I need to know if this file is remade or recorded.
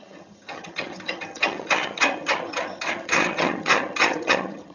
remade